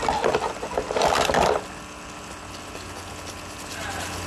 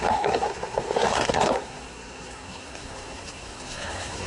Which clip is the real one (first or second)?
first